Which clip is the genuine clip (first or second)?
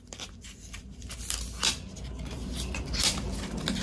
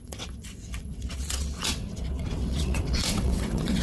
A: first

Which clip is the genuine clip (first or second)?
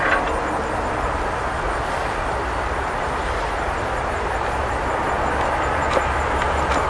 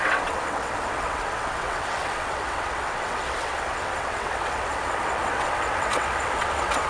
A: first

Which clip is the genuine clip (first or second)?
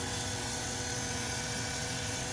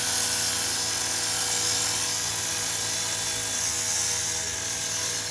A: second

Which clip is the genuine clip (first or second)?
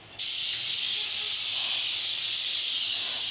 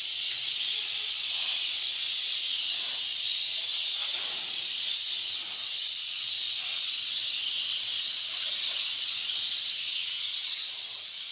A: first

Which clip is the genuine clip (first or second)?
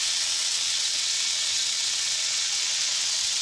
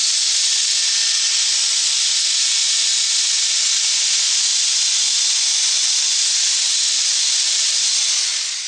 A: second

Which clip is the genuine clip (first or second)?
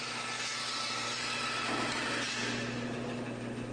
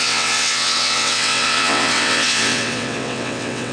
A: first